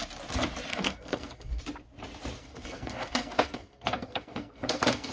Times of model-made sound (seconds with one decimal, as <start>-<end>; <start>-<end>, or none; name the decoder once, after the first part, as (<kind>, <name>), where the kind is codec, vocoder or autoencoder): 0.7-1.6 (codec, SNAC); 2.4-5.1